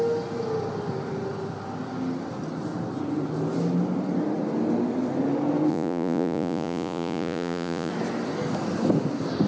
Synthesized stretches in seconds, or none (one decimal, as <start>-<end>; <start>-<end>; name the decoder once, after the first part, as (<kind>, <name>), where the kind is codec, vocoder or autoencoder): 5.7-7.9 (vocoder, Vocos)